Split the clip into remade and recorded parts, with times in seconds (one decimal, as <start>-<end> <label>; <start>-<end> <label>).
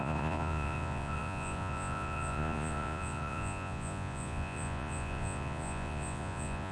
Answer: 0.0-6.7 remade